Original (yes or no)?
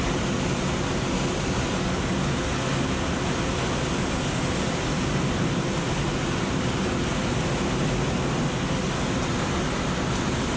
yes